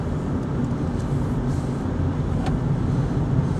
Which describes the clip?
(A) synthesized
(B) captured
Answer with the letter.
B